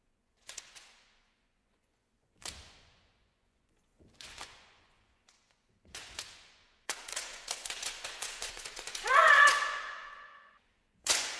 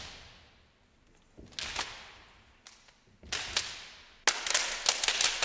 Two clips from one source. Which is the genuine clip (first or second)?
second